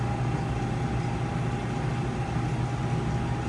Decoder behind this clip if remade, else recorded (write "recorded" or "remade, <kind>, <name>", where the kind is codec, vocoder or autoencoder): recorded